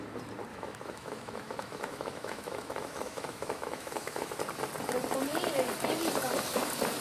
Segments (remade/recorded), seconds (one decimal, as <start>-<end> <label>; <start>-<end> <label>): 0.0-0.5 recorded; 0.5-4.4 remade; 4.4-7.0 recorded